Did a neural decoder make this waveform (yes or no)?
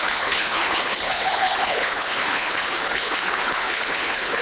yes